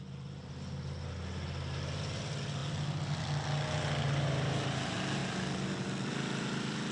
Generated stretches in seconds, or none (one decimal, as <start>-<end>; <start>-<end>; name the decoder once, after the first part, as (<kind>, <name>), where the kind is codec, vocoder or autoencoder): none